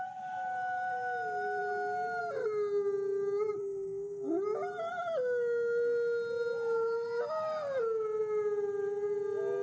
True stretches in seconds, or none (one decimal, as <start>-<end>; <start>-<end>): 0.0-3.6; 4.3-9.6